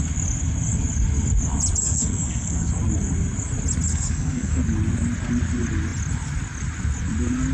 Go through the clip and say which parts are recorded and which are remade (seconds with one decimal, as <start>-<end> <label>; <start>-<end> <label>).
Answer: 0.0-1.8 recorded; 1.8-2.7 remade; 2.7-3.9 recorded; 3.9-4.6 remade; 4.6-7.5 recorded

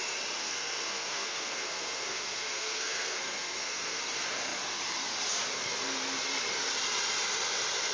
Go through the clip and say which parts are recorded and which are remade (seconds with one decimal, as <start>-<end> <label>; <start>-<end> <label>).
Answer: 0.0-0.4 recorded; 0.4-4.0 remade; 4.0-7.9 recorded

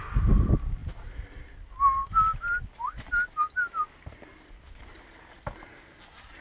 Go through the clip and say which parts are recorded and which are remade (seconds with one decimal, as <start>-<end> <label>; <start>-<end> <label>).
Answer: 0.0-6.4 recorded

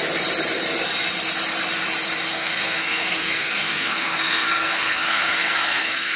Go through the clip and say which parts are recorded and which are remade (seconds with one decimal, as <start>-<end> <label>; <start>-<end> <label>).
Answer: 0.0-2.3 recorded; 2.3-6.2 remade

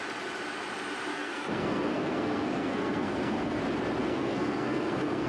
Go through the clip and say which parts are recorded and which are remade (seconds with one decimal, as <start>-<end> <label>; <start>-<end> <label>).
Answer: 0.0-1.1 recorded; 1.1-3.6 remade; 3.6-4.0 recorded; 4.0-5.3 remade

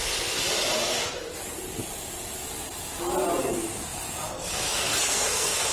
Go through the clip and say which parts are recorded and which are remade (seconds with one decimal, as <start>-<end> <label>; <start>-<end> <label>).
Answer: 0.0-3.4 recorded; 3.4-5.7 remade